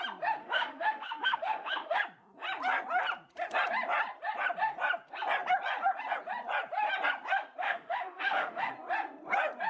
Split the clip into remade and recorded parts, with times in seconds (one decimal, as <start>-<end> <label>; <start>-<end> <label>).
0.0-0.4 recorded; 0.4-2.0 remade; 2.0-7.6 recorded; 7.6-8.7 remade; 8.7-9.7 recorded